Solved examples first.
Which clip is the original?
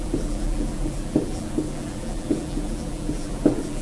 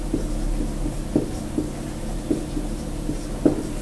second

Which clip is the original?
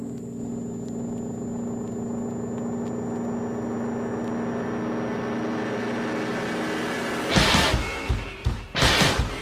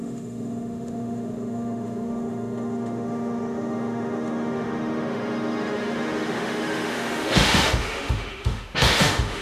first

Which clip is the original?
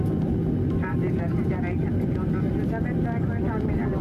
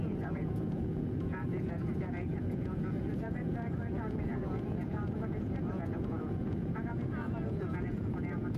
first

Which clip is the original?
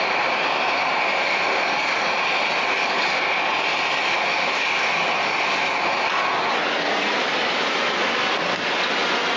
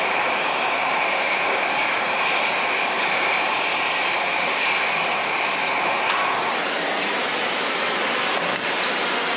first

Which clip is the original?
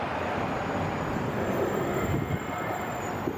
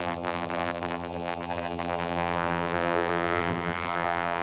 first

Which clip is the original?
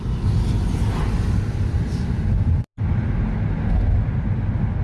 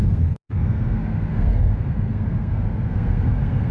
first